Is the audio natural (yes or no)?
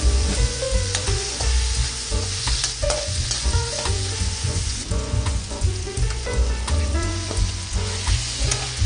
no